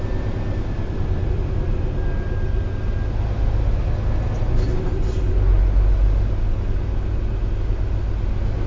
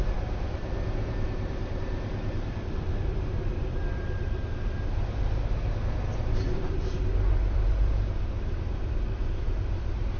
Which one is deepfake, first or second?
second